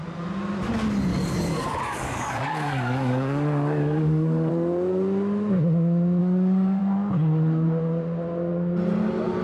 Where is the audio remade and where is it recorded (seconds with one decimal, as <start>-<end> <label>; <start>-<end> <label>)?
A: 0.0-1.1 recorded; 1.1-4.5 remade; 4.5-6.2 recorded; 6.2-6.8 remade; 6.8-9.4 recorded